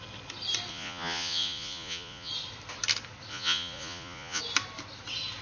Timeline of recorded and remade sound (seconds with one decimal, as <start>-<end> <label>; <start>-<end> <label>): 0.0-0.7 recorded; 0.7-2.3 remade; 2.3-3.3 recorded; 3.3-4.4 remade; 4.4-5.4 recorded